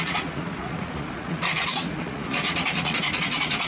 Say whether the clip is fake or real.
fake